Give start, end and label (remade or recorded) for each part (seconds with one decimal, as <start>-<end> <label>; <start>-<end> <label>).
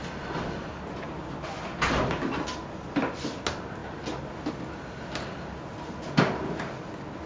0.0-7.3 recorded